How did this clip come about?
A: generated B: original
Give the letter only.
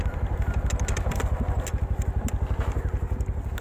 B